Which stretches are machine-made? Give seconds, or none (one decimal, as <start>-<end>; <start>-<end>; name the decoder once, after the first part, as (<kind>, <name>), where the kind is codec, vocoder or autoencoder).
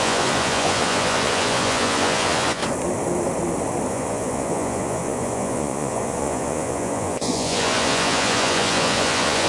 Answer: 0.0-2.6 (vocoder, Vocos); 3.9-9.5